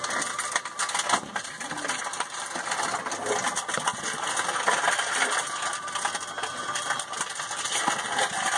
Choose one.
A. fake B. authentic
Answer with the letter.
B